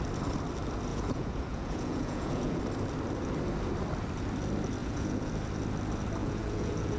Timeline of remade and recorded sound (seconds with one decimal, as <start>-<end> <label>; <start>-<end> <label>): 0.0-0.9 recorded; 0.9-2.6 remade; 2.6-4.8 recorded; 4.8-5.3 remade; 5.3-6.2 recorded; 6.2-7.0 remade